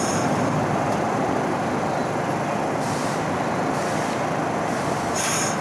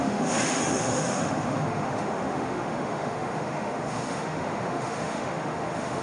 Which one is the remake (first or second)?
second